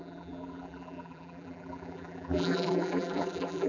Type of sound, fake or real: fake